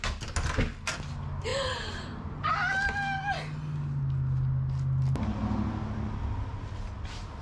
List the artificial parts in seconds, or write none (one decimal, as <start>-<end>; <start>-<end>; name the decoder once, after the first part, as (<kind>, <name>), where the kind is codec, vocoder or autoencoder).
1.5-2.5 (vocoder, BigVGAN v2)